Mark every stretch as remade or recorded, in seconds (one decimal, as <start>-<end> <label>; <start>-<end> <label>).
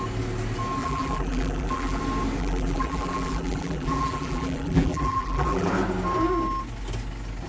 0.0-0.8 recorded; 0.8-2.0 remade; 2.0-2.4 recorded; 2.4-5.7 remade; 5.7-7.5 recorded